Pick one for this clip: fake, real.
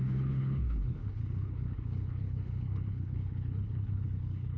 fake